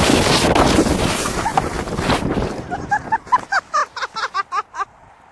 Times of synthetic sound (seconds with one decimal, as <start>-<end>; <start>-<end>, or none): none